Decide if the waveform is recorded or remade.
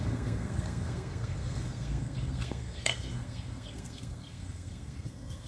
remade